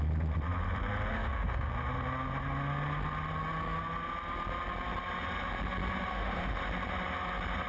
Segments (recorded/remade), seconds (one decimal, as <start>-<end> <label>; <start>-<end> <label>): 0.0-1.1 recorded; 1.1-1.7 remade; 1.7-6.1 recorded; 6.1-6.6 remade; 6.6-7.7 recorded